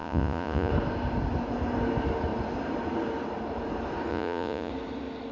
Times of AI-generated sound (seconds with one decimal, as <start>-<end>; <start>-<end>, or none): 0.0-0.7; 4.1-4.7

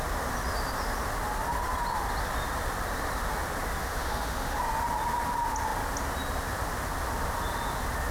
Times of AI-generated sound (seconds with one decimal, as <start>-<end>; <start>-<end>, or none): 3.8-4.6

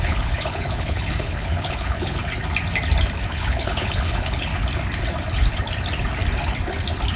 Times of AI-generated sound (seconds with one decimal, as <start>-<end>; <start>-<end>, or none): 0.0-2.2; 3.3-4.5

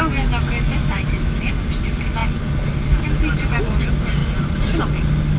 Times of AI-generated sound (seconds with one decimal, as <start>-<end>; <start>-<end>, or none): 0.8-1.5

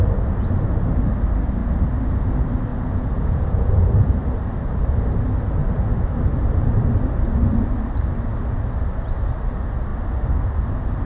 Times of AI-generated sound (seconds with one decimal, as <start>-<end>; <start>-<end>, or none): 2.7-3.8

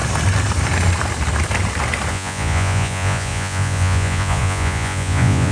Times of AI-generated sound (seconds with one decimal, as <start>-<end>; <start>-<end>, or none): 2.1-5.5

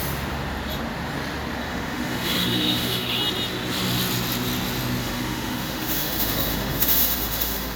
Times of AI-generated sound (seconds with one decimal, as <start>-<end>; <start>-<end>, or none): 1.6-3.2; 5.0-7.8